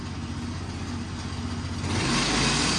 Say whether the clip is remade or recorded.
recorded